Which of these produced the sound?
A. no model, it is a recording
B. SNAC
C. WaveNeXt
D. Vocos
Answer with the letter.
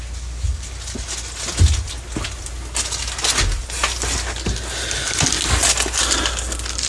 A